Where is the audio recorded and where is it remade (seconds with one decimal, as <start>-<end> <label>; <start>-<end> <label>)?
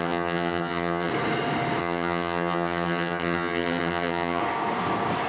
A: 0.0-1.1 remade; 1.1-1.8 recorded; 1.8-4.4 remade; 4.4-5.3 recorded